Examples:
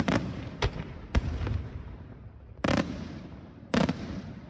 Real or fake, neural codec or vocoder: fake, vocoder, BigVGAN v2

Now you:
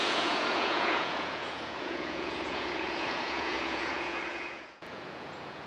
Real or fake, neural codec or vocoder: fake, vocoder, Vocos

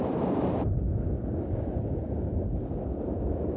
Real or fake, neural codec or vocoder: real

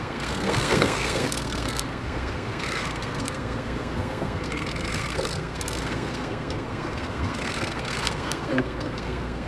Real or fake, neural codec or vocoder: fake, codec, SNAC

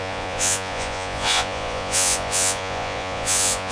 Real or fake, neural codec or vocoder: fake, vocoder, Vocos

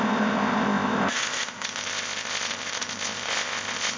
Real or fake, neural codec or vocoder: fake, codec, ZipCodec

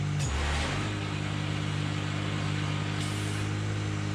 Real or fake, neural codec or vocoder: real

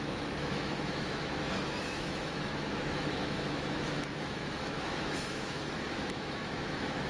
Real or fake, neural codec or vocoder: fake, autoencoder, DAC-VAE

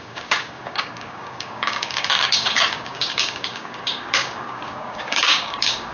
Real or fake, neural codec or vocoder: fake, codec, DAC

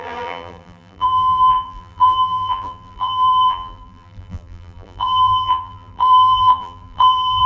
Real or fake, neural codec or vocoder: fake, vocoder, BigVGAN v2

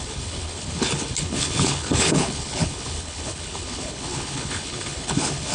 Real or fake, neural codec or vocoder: fake, codec, HILCodec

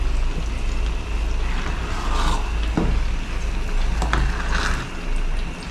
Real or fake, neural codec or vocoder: real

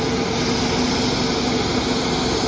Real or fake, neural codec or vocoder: real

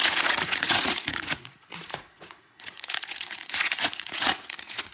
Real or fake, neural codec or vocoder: fake, vocoder, Vocos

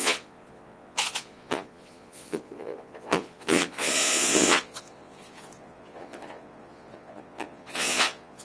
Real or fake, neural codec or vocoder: fake, vocoder, Vocos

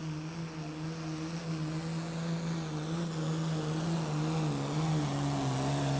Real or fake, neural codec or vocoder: real